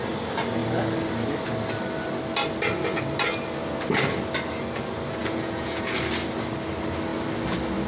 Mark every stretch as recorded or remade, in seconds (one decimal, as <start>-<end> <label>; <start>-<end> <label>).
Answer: 0.0-5.2 recorded; 5.2-6.0 remade; 6.0-7.9 recorded